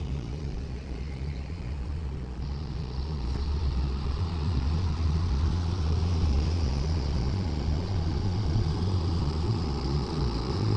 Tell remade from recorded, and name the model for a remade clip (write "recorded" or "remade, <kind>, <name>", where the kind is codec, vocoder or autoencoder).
remade, vocoder, Vocos